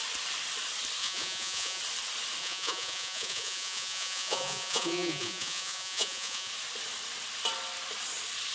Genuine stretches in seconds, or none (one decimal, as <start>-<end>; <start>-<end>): 0.0-1.0; 1.8-2.4; 6.5-8.5